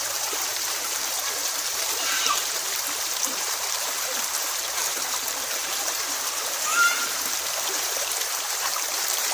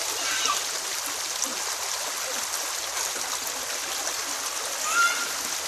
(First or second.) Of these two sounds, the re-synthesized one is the first